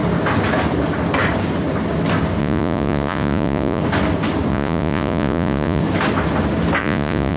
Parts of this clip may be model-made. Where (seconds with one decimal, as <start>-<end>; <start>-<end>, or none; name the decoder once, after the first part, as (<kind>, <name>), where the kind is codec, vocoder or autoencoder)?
2.4-3.8 (vocoder, Vocos); 4.5-5.8; 6.8-7.4